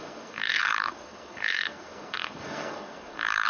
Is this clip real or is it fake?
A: fake